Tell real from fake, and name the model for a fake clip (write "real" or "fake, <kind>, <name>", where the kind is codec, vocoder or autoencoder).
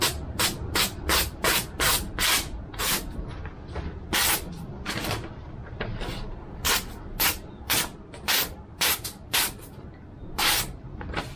fake, vocoder, BigVGAN v2